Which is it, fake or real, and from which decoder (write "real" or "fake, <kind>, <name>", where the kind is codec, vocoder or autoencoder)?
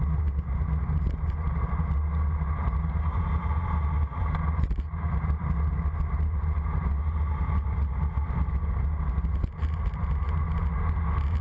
real